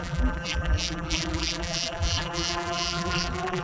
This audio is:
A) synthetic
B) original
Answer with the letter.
A